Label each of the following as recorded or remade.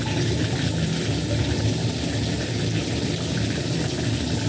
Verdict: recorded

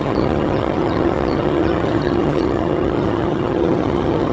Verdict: remade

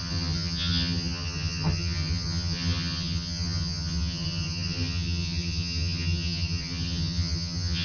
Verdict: remade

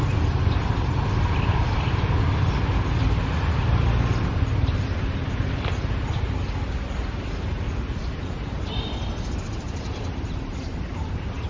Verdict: recorded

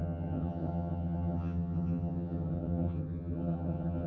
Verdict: remade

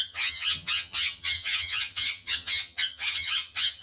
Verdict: remade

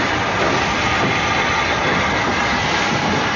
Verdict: recorded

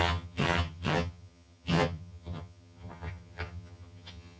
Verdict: remade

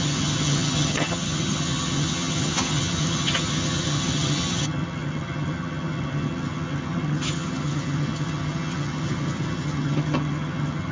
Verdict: remade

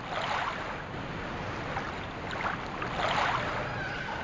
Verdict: recorded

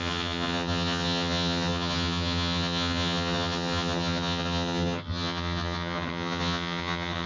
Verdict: remade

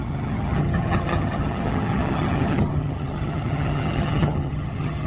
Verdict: remade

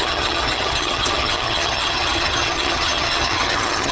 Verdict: remade